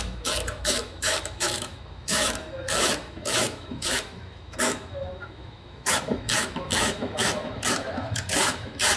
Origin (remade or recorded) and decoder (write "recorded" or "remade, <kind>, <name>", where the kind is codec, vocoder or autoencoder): remade, autoencoder, DAC-VAE